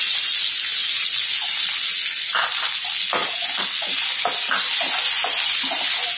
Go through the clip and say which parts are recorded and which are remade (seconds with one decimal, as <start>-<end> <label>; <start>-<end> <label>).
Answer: 0.0-6.2 recorded